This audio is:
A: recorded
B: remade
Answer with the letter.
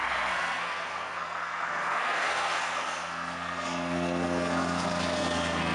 B